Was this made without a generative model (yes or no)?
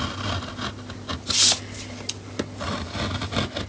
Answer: yes